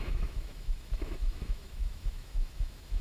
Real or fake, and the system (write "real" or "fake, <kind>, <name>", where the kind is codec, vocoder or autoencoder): fake, autoencoder, DAC-VAE